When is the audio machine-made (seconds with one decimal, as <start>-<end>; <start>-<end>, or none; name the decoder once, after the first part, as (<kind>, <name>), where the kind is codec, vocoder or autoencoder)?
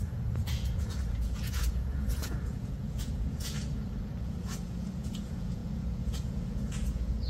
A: 0.0-7.3 (vocoder, Vocos)